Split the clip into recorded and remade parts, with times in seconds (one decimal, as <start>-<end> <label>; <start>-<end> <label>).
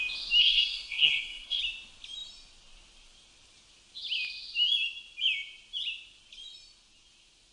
0.0-0.4 recorded; 0.4-1.6 remade; 1.6-7.5 recorded